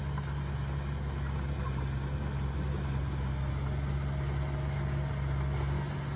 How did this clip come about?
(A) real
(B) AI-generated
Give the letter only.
A